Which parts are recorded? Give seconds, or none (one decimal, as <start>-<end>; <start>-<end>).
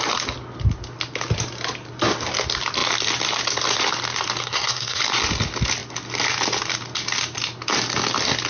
0.0-4.4; 5.0-8.5